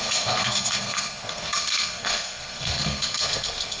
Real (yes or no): no